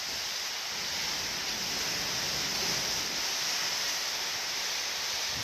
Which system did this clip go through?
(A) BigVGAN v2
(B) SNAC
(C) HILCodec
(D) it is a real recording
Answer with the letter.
D